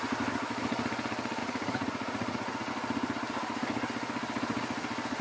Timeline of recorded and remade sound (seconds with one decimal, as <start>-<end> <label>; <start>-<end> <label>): 0.0-1.4 recorded; 1.4-2.7 remade; 2.7-5.2 recorded